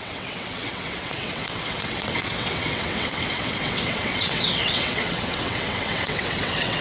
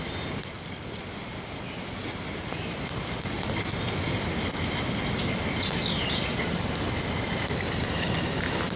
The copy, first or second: first